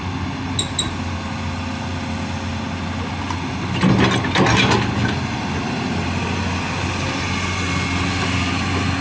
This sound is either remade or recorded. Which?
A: recorded